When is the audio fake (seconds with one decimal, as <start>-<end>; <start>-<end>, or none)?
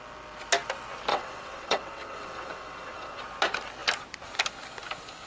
1.1-3.2